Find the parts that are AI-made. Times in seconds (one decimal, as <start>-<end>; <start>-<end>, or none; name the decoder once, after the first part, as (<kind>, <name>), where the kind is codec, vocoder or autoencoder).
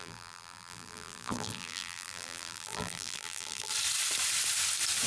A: 0.0-3.7 (vocoder, BigVGAN v2)